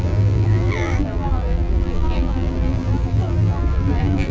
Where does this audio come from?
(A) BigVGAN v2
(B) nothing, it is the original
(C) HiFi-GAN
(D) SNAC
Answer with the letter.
A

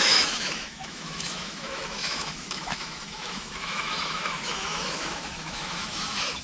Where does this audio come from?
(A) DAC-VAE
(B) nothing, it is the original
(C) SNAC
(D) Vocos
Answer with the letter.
A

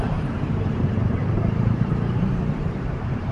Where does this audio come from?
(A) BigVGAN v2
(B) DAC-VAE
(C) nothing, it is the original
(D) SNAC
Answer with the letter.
A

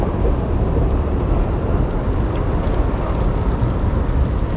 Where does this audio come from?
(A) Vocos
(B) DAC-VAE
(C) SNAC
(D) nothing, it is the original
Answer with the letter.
D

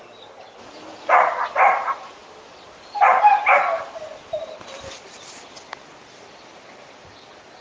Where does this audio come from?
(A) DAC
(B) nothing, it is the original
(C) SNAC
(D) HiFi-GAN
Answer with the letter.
B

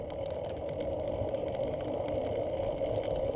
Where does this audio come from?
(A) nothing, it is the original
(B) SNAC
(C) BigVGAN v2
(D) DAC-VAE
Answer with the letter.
A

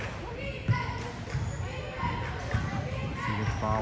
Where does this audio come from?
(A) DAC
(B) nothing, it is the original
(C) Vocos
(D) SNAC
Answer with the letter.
B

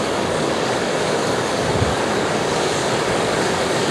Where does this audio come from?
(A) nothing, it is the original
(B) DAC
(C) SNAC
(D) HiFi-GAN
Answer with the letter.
B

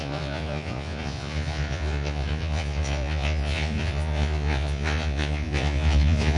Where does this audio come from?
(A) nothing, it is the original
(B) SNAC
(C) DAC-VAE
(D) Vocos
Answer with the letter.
D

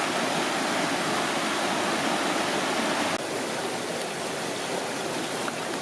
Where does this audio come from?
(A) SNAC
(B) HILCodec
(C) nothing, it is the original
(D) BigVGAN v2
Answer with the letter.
C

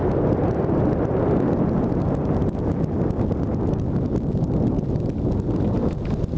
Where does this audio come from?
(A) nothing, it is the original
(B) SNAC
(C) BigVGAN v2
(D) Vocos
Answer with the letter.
A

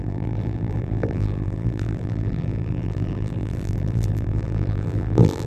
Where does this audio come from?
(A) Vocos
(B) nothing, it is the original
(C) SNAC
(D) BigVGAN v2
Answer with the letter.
D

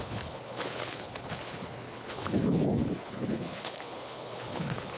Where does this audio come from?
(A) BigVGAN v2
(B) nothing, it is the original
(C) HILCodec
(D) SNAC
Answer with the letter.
C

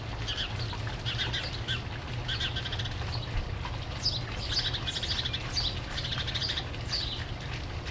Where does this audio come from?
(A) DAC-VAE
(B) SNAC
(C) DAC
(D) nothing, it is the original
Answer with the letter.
D